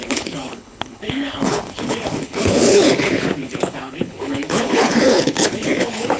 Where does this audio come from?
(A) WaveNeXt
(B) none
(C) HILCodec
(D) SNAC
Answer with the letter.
C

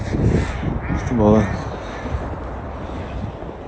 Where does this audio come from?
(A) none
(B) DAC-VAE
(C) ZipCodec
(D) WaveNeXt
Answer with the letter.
A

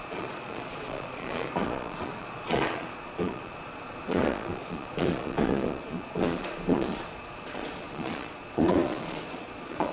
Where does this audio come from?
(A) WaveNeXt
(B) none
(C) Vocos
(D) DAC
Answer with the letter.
C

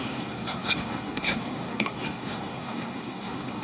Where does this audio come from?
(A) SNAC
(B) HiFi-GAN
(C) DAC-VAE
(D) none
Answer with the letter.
A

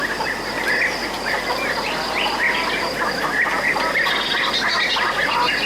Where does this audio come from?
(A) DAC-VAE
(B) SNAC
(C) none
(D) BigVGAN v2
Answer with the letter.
C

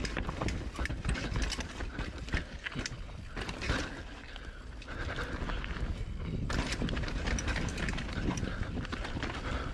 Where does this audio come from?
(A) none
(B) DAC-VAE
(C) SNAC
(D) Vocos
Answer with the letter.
A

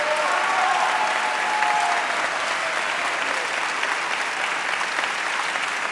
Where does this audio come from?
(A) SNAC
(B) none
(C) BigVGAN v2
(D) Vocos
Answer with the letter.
B